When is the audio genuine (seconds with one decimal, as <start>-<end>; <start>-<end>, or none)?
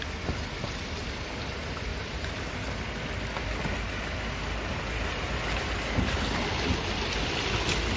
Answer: 0.0-8.0